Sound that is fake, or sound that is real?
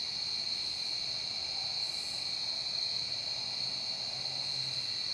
real